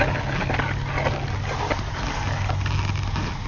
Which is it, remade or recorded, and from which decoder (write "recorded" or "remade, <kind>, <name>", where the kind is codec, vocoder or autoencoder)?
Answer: recorded